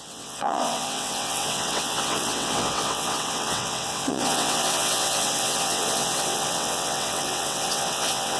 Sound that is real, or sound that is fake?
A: fake